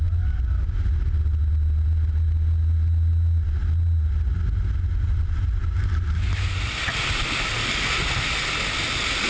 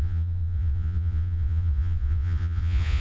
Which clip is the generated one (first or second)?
second